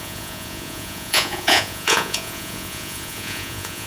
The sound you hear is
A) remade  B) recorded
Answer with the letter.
A